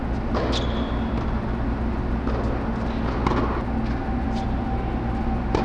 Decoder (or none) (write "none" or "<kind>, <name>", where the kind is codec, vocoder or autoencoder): none